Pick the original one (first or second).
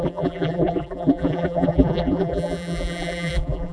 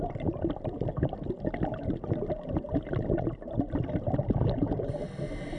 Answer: second